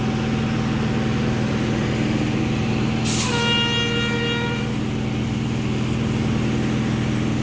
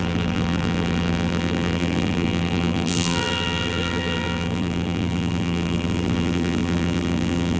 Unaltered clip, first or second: first